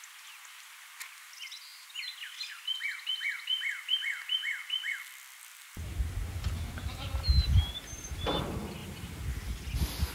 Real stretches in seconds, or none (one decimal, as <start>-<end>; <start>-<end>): 0.0-10.1